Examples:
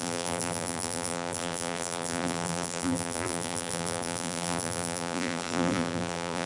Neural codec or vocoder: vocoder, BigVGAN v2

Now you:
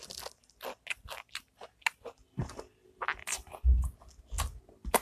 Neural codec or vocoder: none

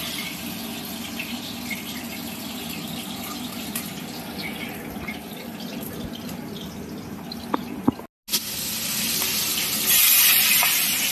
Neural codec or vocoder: none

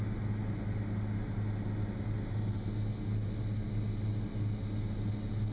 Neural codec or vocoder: none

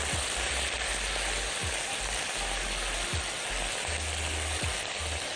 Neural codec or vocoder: none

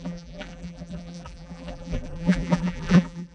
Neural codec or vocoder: vocoder, BigVGAN v2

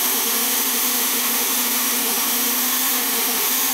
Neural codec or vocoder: autoencoder, DAC-VAE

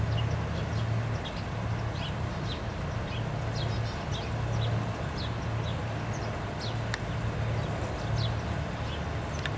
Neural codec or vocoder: none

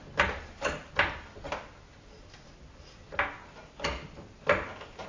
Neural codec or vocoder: none